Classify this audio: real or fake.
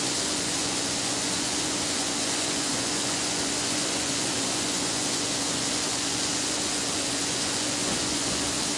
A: fake